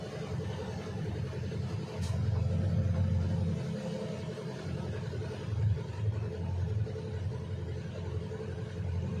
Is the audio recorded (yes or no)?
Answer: yes